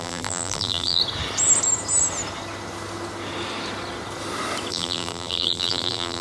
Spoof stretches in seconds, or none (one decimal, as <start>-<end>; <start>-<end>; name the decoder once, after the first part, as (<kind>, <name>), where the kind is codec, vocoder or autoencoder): 0.0-1.0 (vocoder, BigVGAN v2); 4.7-6.2